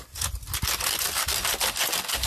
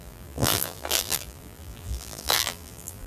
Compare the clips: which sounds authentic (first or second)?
first